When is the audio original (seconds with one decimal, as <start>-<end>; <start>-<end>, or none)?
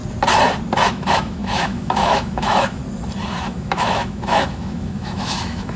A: 0.0-0.9; 2.8-3.4